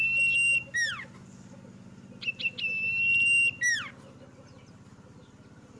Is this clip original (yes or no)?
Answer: yes